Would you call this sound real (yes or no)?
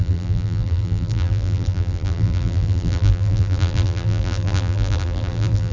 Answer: no